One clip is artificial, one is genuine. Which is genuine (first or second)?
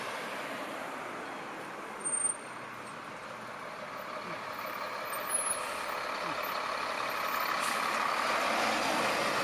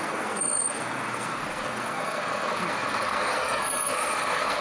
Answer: first